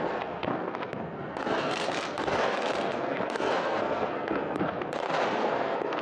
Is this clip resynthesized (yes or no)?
yes